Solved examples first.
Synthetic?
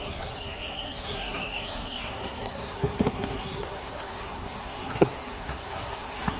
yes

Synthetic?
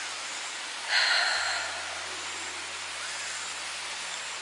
no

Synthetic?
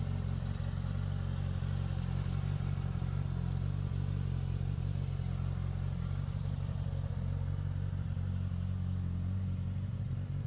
no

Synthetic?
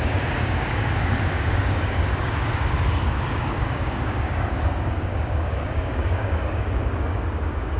yes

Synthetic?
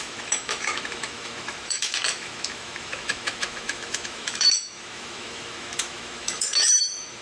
yes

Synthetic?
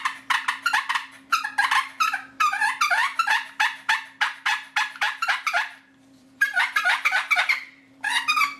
yes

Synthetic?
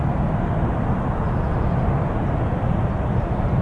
no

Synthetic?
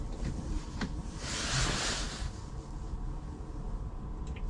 no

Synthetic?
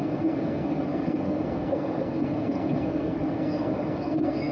yes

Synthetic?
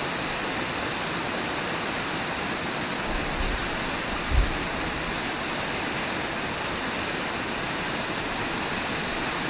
no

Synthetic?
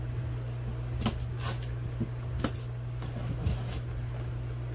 no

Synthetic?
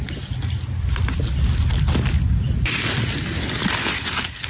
no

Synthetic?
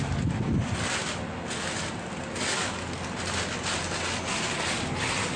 no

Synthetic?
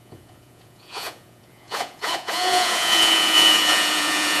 yes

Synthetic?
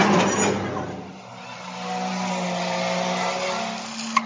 no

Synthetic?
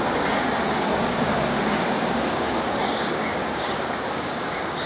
yes